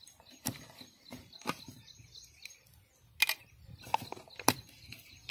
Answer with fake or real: real